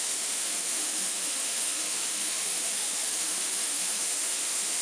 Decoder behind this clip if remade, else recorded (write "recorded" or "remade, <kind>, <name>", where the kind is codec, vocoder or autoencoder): remade, autoencoder, DAC-VAE